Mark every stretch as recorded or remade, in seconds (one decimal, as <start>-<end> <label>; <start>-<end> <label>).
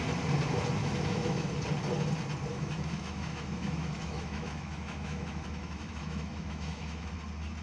0.0-0.8 recorded; 0.8-1.5 remade; 1.5-2.5 recorded; 2.5-7.1 remade; 7.1-7.6 recorded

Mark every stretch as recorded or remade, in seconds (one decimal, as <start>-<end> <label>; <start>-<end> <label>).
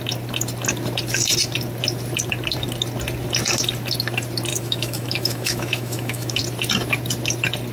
0.0-4.5 recorded; 4.5-6.4 remade; 6.4-7.7 recorded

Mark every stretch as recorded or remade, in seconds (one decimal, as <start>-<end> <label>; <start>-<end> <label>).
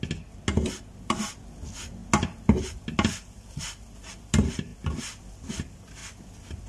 0.0-6.7 recorded